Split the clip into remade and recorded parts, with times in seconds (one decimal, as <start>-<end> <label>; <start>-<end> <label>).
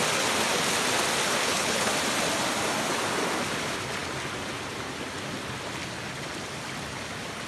0.0-1.4 recorded; 1.4-1.9 remade; 1.9-7.5 recorded